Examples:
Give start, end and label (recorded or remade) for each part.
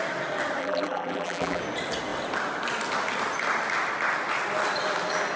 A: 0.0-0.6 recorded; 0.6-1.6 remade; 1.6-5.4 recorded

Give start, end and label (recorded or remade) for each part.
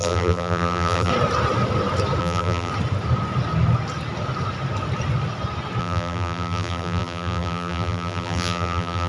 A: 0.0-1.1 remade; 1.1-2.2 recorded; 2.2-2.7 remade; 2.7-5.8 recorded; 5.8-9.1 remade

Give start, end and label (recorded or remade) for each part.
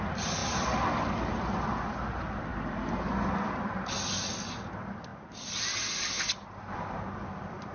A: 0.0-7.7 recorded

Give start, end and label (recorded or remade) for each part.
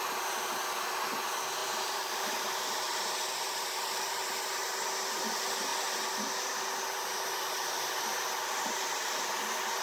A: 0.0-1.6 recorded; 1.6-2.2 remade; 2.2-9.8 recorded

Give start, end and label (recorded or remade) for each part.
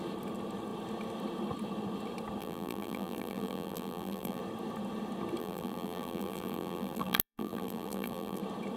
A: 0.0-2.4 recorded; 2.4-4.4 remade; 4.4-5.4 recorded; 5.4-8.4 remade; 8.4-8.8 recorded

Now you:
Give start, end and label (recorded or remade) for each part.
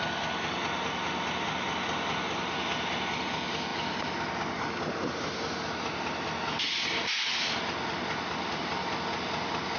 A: 0.0-9.8 recorded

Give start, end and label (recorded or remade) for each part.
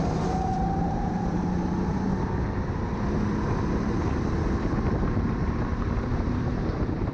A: 0.0-2.1 remade; 2.1-5.8 recorded; 5.8-7.1 remade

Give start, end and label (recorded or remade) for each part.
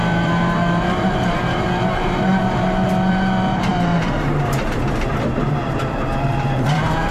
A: 0.0-7.1 remade